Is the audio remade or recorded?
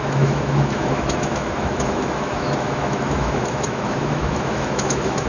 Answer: remade